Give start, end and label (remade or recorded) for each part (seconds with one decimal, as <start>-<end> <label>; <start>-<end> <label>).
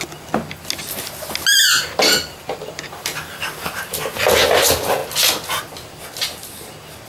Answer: 0.0-2.3 recorded; 2.3-3.1 remade; 3.1-7.1 recorded